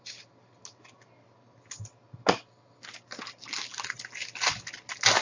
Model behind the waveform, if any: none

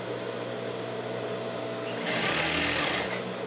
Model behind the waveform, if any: none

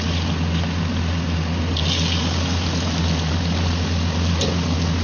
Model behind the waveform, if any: none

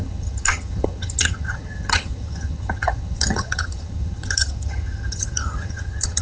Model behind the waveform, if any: vocoder, HiFi-GAN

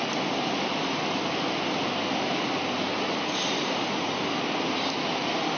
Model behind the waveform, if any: none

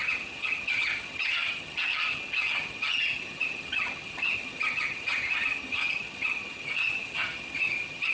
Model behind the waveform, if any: vocoder, HiFi-GAN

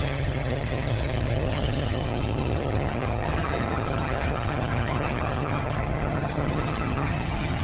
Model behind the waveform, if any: vocoder, HiFi-GAN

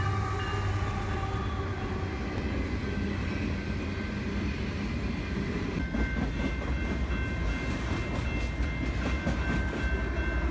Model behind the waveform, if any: none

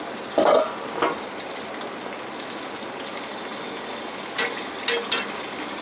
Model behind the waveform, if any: none